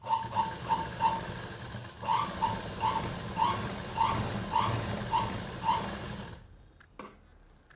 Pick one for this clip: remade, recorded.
recorded